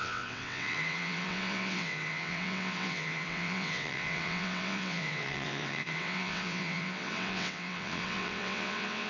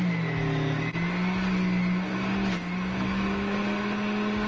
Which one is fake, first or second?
first